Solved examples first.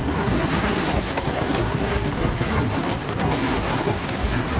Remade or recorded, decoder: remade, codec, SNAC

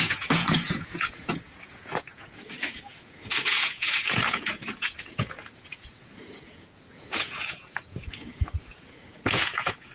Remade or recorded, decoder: remade, vocoder, Vocos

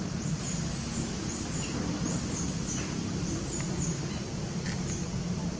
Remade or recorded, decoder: recorded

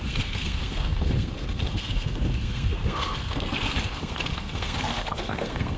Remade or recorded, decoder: remade, codec, SNAC